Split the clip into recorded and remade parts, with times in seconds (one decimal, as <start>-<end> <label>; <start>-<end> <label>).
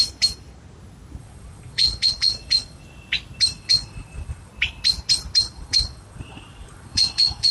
0.0-1.2 recorded; 1.2-2.8 remade; 2.8-3.5 recorded; 3.5-4.5 remade; 4.5-5.4 recorded; 5.4-7.5 remade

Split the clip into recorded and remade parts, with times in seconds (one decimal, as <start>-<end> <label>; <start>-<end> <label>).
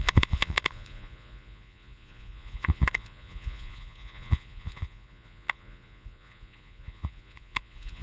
0.0-8.0 remade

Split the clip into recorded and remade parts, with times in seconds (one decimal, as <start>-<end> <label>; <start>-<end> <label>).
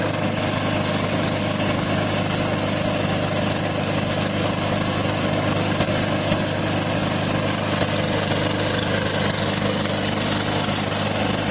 0.0-11.5 recorded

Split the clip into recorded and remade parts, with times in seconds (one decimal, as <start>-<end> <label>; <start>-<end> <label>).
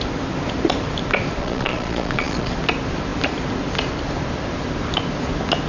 0.0-1.4 recorded; 1.4-2.5 remade; 2.5-5.7 recorded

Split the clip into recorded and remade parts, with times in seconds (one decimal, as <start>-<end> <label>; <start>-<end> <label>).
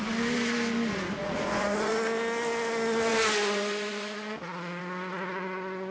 0.0-1.2 recorded; 1.2-1.9 remade; 1.9-5.9 recorded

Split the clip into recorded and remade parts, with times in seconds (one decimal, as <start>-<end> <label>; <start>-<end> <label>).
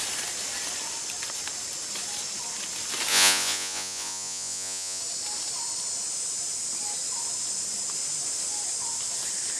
0.0-3.1 recorded; 3.1-5.0 remade; 5.0-9.6 recorded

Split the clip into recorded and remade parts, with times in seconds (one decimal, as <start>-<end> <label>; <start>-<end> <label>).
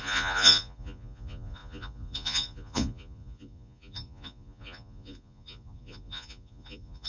0.0-7.1 remade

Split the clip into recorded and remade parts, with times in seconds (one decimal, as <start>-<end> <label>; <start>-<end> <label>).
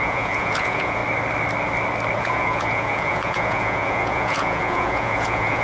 0.0-1.0 remade; 1.0-2.2 recorded; 2.2-5.6 remade